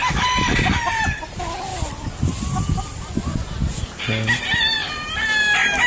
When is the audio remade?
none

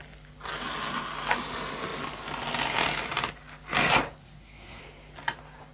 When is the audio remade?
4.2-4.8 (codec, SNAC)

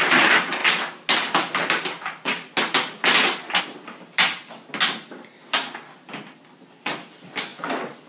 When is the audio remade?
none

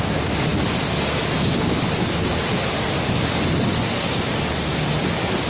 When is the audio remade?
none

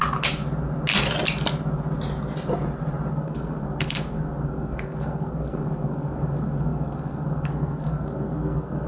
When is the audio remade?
3.1-8.9 (codec, SNAC)